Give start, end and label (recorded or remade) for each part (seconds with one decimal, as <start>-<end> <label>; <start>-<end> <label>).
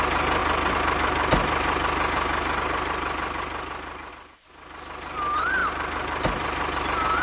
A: 0.0-7.2 recorded